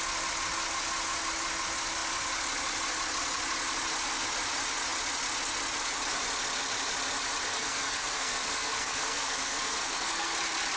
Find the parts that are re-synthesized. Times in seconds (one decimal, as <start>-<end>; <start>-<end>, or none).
7.5-10.3